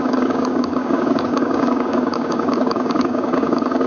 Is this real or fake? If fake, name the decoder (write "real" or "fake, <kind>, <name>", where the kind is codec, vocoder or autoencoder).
fake, codec, DAC